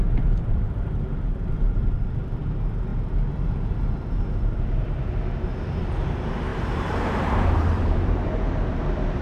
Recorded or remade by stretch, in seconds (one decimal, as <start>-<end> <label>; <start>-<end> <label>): 0.0-6.5 recorded; 6.5-9.2 remade